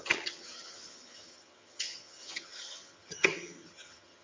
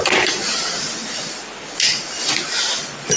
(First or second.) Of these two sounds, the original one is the second